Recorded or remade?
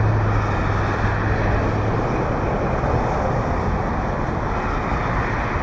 recorded